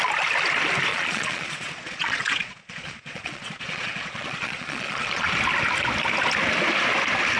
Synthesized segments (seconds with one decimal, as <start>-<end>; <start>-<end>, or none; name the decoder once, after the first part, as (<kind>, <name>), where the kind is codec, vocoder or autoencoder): 0.9-5.3 (vocoder, Vocos)